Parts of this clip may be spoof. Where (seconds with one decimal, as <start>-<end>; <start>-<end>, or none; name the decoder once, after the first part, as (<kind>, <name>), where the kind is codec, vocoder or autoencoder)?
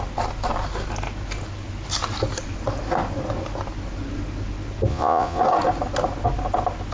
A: 4.9-5.4 (vocoder, Vocos)